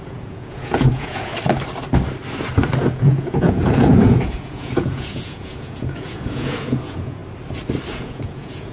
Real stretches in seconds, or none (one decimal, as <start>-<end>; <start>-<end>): 1.3-2.9; 7.2-7.9

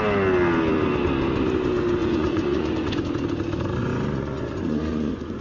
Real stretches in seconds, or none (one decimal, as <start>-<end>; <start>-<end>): 0.0-2.0; 2.9-3.8

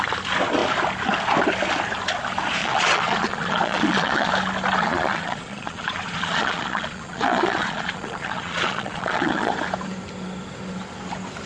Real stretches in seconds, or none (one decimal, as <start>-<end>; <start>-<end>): 0.0-2.6; 4.3-4.8; 9.5-11.5

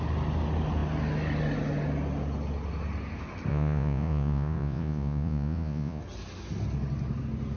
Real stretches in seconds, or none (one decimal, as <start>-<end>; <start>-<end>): 0.0-3.5; 6.0-7.6

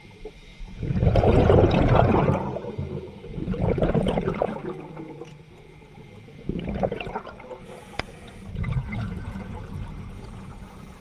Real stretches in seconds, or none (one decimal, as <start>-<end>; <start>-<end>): none